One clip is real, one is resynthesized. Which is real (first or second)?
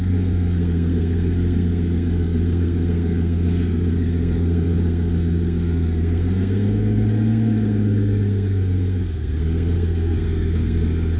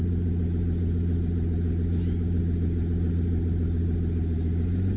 second